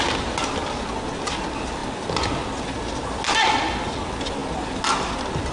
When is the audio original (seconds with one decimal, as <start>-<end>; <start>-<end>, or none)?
0.0-5.5